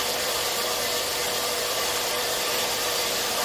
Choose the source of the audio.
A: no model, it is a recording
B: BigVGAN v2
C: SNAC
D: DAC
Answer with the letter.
B